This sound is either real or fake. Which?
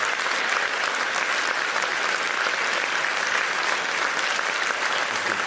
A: real